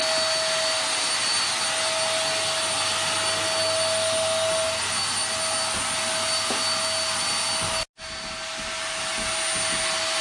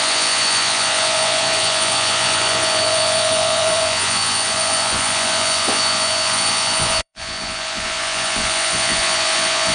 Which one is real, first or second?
first